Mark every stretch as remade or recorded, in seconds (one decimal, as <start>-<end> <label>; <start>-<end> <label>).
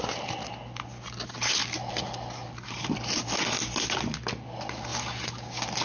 0.0-5.8 recorded